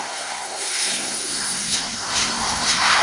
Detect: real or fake fake